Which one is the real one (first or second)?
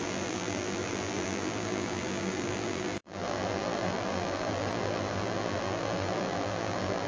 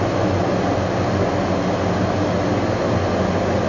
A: second